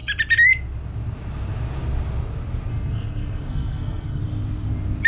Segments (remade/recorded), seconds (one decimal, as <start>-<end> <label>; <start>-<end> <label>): 0.0-2.7 recorded; 2.7-4.2 remade; 4.2-5.1 recorded